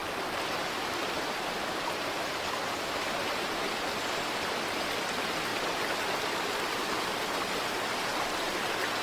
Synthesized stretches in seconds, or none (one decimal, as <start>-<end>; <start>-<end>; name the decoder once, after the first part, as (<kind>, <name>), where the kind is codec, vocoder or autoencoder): none